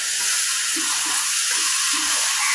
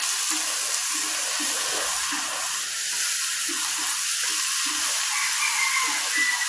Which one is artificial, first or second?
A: first